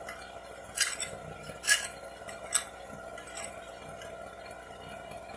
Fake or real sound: real